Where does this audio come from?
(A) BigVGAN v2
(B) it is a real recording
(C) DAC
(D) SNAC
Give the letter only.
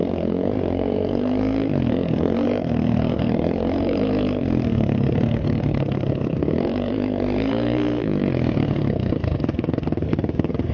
D